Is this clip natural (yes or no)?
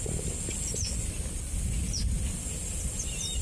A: yes